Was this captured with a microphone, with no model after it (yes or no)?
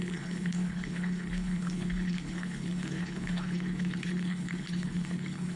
no